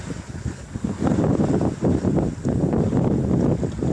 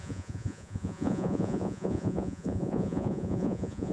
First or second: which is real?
first